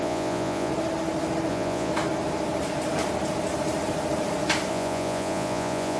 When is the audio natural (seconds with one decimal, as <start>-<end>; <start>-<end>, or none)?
0.7-1.5; 1.9-4.7